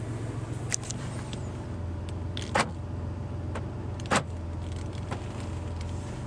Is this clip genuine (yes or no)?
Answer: yes